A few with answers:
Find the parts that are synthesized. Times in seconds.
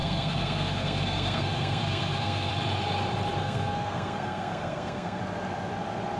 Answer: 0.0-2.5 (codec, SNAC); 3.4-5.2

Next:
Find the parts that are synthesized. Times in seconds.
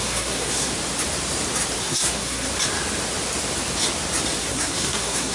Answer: 0.0-0.7 (codec, SNAC); 1.8-2.5; 4.4-5.3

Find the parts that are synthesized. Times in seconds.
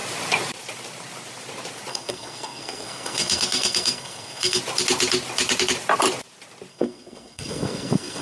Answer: 1.9-4.6 (codec, SNAC); 6.7-8.2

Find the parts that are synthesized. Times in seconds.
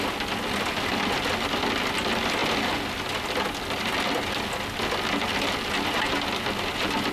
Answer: none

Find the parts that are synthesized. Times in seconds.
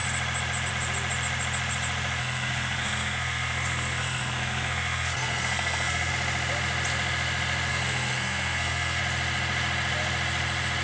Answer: 2.2-6.1 (codec, SNAC); 7.7-9.0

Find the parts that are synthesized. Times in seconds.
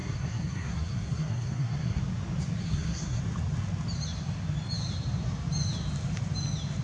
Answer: 0.0-2.0 (codec, SNAC); 2.6-3.2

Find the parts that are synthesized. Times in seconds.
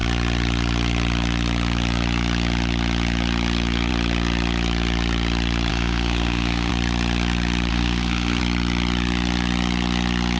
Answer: 5.7-6.7 (codec, SNAC); 7.7-8.4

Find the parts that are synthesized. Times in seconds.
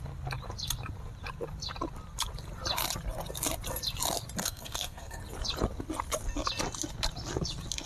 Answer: 4.4-5.2 (codec, SNAC)